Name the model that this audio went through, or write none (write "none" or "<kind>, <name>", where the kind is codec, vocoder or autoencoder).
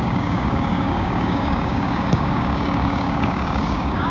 codec, DAC